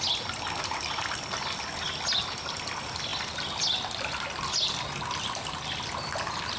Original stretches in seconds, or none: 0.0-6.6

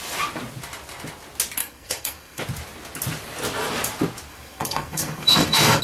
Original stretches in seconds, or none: 0.0-1.6; 2.4-4.3

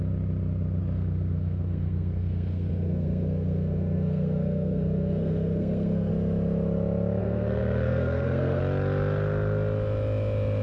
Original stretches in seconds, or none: 0.0-0.8; 6.1-7.2; 8.6-10.6